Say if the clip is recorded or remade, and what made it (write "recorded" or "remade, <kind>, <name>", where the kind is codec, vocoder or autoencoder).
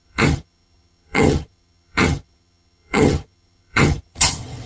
remade, vocoder, HiFi-GAN